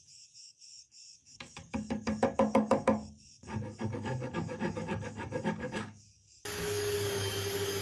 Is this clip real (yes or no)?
no